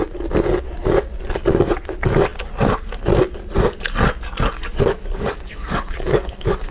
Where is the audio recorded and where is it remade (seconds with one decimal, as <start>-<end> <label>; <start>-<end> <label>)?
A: 0.0-4.7 recorded; 4.7-6.7 remade